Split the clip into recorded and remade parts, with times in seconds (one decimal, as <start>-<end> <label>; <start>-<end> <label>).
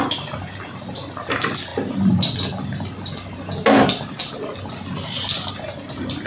0.0-6.3 recorded